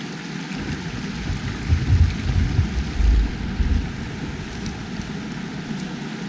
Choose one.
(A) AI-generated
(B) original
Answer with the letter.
B